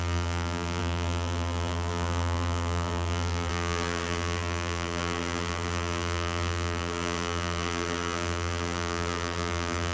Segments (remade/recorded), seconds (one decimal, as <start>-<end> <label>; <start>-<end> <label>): 0.0-9.9 remade